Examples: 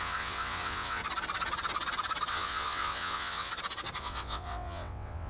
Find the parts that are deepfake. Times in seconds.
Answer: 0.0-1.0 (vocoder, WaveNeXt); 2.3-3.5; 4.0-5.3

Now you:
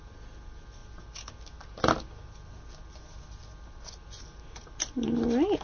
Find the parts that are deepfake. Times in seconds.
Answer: none

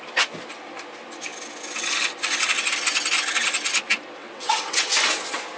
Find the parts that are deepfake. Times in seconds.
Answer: 4.2-4.9 (vocoder, WaveNeXt)

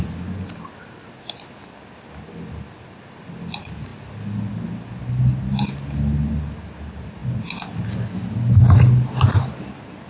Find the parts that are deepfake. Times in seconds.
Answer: none

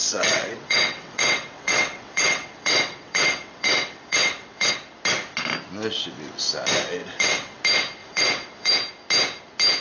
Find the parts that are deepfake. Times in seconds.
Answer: 0.0-4.7 (vocoder, WaveNeXt); 7.0-7.6; 8.0-8.7

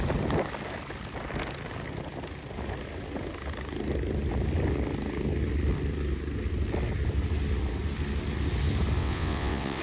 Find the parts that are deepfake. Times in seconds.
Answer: 9.0-9.8 (vocoder, WaveNeXt)